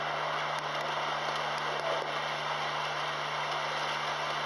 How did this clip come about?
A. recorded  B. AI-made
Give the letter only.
A